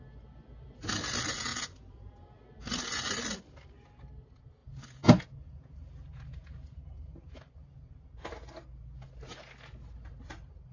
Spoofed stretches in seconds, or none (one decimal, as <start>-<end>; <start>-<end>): 1.5-2.4; 4.6-7.3